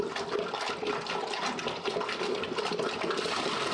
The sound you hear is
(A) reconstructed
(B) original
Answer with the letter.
B